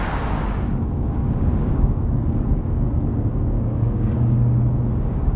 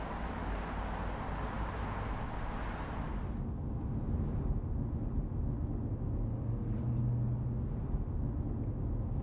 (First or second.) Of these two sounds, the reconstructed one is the first